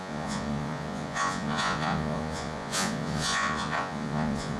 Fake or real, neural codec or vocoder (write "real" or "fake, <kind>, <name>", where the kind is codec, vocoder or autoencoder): fake, vocoder, Vocos